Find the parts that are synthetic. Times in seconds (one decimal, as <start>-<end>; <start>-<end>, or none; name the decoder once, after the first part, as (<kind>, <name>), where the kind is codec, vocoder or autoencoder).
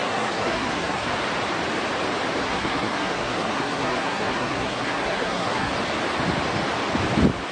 0.0-1.1 (codec, SNAC); 2.4-5.7